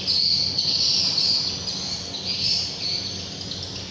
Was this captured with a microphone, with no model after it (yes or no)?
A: yes